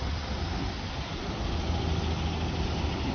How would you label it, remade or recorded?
recorded